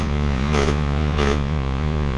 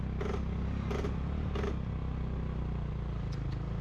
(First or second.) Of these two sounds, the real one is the second